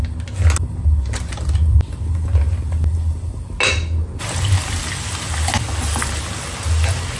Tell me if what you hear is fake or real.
real